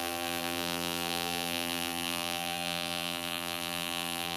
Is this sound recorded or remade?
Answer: remade